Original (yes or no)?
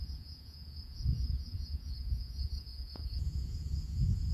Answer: no